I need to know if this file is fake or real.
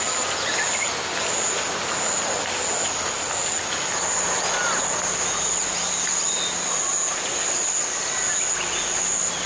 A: real